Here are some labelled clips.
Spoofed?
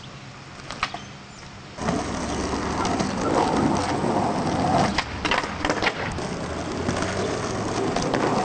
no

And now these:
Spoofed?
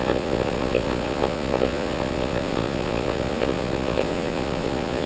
yes